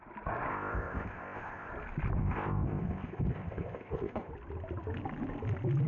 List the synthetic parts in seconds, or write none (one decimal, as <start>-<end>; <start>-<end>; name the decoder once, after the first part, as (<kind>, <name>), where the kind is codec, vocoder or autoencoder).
0.5-1.7 (codec, ZipCodec); 2.2-4.3